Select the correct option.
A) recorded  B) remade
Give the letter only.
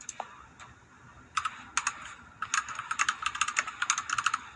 A